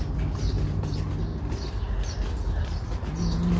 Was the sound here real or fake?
real